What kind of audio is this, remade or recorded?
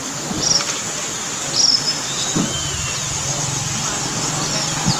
recorded